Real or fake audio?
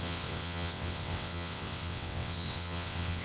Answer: fake